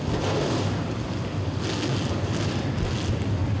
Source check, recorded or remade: recorded